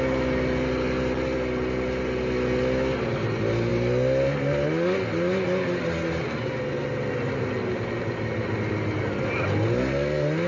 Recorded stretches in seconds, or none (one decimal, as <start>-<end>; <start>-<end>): 0.0-10.5